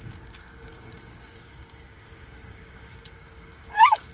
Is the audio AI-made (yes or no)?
yes